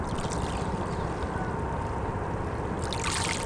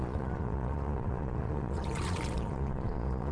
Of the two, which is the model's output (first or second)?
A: second